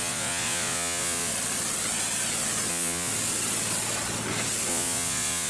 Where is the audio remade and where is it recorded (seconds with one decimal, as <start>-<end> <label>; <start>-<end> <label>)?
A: 0.0-1.3 remade; 1.3-2.7 recorded; 2.7-3.1 remade; 3.1-4.7 recorded; 4.7-5.5 remade